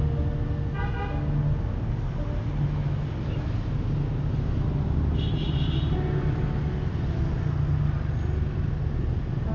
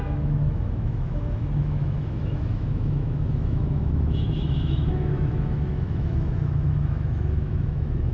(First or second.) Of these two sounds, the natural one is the first